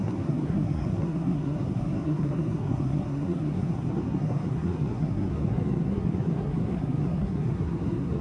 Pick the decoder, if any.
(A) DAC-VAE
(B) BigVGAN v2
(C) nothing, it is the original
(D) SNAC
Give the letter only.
D